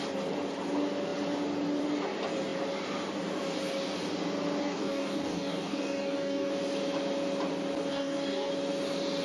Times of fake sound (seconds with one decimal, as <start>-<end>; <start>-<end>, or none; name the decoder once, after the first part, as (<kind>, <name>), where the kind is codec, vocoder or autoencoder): 4.6-6.5 (codec, DAC); 7.9-8.5